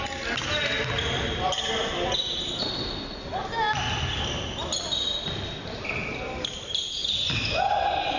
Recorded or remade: recorded